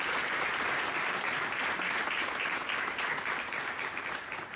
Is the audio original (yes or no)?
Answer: yes